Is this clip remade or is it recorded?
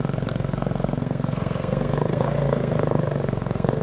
remade